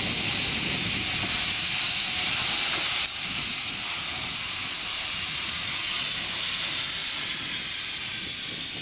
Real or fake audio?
real